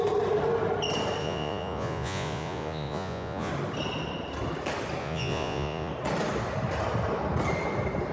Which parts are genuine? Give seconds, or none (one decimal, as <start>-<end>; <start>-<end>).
0.0-1.2; 3.5-5.0; 5.9-8.1